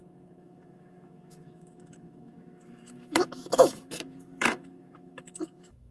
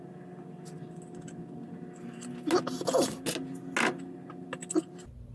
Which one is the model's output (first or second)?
first